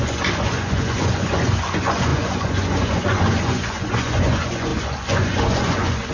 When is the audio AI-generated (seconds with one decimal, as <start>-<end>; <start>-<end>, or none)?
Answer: 0.0-6.1